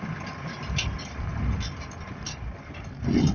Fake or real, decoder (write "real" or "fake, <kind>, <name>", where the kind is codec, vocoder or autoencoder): real